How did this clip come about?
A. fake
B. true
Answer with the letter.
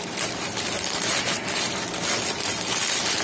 B